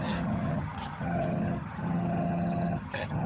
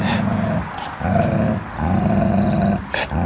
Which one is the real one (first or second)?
second